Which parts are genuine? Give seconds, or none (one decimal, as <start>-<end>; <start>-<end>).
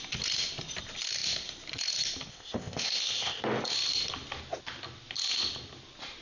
0.0-2.3; 3.4-6.2